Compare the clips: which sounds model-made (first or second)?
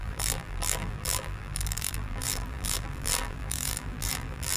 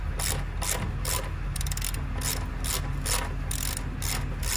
first